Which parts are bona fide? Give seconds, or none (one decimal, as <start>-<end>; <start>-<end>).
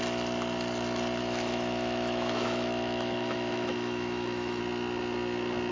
0.0-1.2; 4.6-5.7